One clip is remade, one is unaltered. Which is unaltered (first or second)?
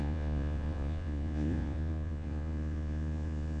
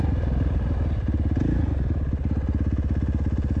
second